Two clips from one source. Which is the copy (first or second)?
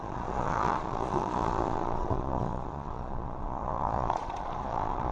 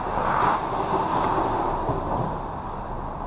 first